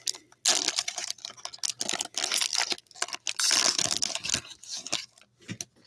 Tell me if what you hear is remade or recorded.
recorded